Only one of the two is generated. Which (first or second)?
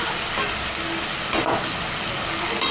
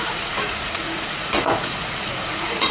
second